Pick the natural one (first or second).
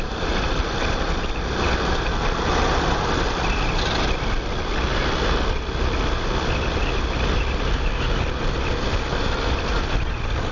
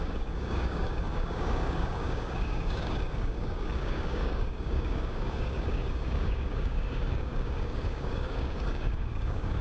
first